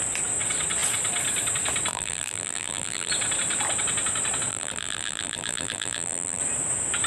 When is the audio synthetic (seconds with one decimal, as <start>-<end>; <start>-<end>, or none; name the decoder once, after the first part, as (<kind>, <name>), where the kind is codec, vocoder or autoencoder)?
1.9-3.1 (vocoder, BigVGAN v2); 4.5-6.4